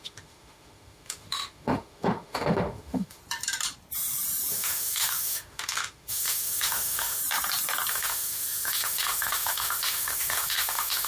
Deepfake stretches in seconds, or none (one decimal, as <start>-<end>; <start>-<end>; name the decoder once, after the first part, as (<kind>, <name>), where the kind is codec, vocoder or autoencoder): 0.0-3.2 (autoencoder, DAC-VAE); 4.5-7.2; 7.9-11.1